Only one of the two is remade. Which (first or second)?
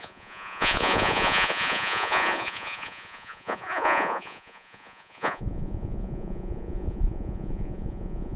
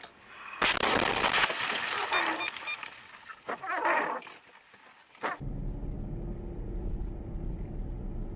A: first